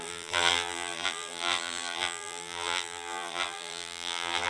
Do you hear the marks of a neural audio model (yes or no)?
yes